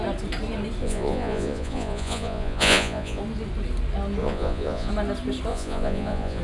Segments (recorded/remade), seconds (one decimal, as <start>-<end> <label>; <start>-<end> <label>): 0.0-0.8 recorded; 0.8-3.2 remade; 3.2-4.2 recorded; 4.2-4.9 remade; 4.9-5.5 recorded; 5.5-6.4 remade